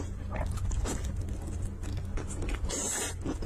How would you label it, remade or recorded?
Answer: recorded